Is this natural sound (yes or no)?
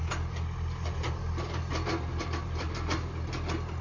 yes